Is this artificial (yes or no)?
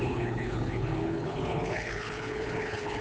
yes